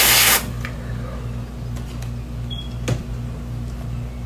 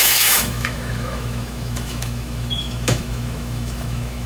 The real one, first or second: first